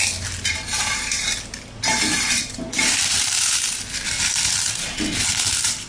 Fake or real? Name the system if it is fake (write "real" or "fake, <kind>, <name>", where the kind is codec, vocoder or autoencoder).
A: real